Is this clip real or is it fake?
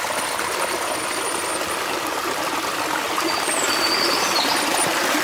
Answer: real